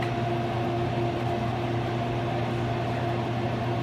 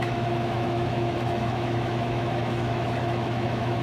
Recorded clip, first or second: first